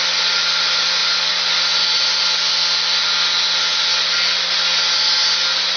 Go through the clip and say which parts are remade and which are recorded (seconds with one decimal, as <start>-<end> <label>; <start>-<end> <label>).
0.0-5.8 recorded